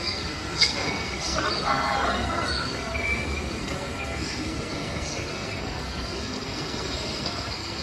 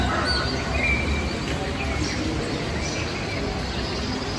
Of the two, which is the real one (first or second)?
second